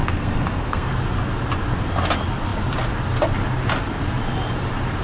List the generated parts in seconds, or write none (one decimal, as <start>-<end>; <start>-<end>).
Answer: 0.0-0.9